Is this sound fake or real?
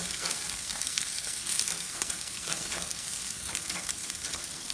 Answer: fake